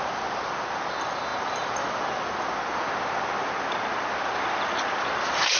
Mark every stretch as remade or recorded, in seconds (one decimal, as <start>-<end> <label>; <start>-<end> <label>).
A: 0.0-5.6 recorded